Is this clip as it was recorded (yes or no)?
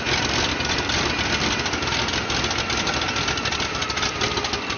yes